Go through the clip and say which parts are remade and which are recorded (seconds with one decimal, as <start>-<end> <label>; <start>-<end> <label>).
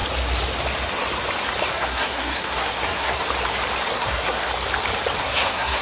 0.0-1.7 recorded; 1.7-3.2 remade; 3.2-3.9 recorded; 3.9-4.5 remade; 4.5-5.2 recorded; 5.2-5.8 remade